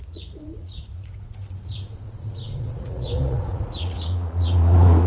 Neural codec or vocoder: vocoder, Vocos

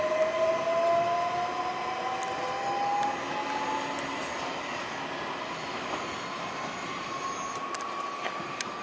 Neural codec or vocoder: none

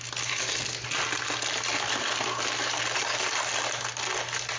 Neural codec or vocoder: none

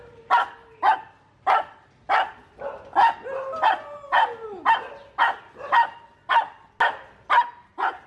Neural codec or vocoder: none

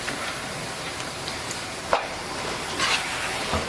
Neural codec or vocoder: vocoder, BigVGAN v2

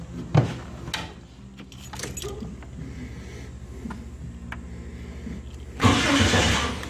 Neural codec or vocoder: none